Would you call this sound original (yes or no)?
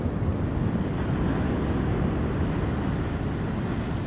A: yes